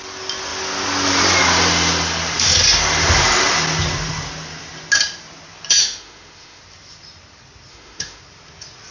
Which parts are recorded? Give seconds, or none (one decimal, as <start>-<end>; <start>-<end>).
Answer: 0.0-5.8; 6.6-7.7; 8.2-8.9